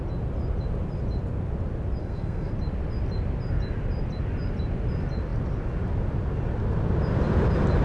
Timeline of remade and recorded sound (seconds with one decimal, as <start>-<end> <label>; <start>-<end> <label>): 0.0-2.0 recorded; 2.0-2.5 remade; 2.5-7.8 recorded